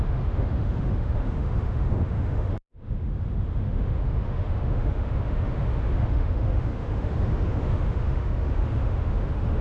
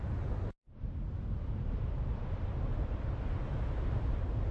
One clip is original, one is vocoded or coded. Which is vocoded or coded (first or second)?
first